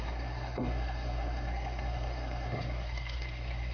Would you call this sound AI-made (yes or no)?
yes